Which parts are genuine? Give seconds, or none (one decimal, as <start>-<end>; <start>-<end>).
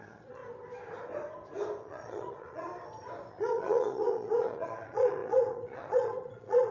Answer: 0.4-1.8; 2.7-3.3